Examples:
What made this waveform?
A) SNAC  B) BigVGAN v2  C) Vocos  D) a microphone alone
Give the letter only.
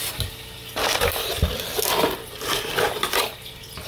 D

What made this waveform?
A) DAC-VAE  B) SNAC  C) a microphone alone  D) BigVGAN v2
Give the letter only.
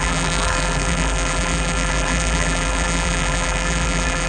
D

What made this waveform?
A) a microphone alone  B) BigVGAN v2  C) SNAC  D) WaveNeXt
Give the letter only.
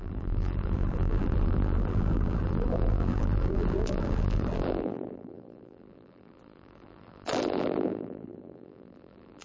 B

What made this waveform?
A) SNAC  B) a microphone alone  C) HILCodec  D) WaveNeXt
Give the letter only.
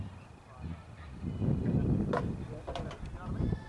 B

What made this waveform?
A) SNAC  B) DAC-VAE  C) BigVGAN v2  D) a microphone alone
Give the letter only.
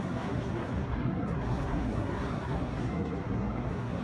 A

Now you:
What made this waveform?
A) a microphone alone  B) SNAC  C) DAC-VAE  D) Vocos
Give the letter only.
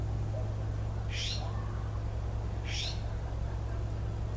A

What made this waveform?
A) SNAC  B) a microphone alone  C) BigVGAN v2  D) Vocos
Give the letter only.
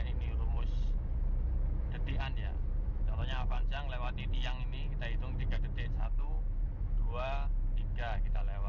B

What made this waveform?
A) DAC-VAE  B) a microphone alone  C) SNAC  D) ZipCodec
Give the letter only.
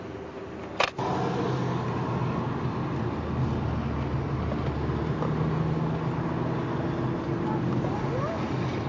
B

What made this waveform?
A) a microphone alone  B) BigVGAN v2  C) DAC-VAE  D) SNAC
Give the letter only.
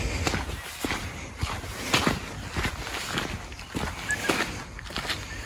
A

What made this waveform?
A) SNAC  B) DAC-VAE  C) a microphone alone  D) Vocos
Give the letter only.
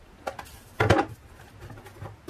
C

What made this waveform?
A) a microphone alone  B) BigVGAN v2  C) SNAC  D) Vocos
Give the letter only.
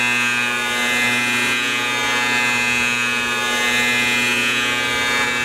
A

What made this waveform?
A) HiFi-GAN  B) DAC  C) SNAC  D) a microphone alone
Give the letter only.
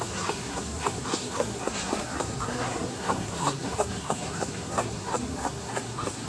C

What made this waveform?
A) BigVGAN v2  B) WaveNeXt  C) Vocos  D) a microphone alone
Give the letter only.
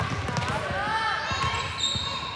D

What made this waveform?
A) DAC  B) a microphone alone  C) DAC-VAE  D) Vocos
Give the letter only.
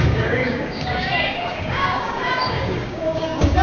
A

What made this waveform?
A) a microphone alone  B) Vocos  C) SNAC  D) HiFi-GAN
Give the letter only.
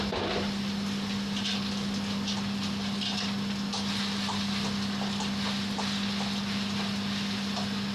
A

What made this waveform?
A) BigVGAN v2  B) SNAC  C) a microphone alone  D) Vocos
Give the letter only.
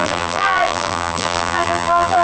A